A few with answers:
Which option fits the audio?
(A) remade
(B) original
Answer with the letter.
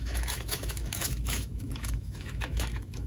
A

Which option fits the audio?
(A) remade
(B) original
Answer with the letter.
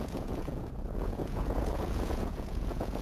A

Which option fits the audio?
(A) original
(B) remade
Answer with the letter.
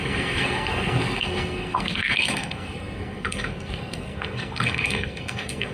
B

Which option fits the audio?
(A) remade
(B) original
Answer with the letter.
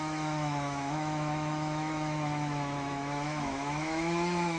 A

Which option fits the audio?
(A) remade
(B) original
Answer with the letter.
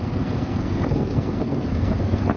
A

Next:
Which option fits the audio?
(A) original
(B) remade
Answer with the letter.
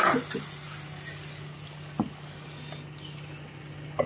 A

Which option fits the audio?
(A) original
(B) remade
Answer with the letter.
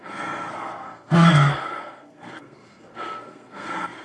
B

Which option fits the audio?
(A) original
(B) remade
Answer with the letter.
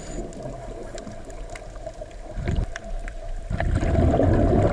A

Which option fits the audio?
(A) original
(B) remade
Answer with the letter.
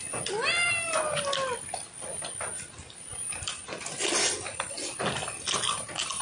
A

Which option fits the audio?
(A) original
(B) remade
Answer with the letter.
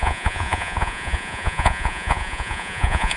B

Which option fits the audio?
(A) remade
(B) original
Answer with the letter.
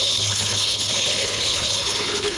A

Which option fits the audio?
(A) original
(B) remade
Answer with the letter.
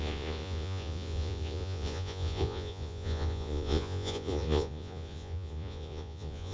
B